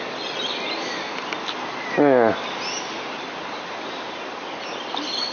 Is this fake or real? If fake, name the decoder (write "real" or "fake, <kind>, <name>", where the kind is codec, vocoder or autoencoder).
real